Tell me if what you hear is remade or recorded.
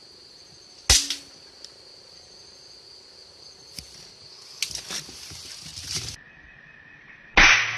recorded